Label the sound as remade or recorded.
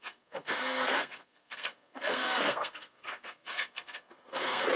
remade